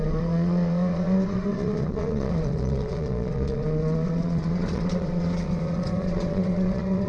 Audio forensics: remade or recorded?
remade